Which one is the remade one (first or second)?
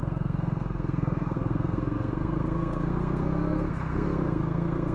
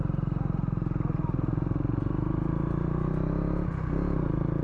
first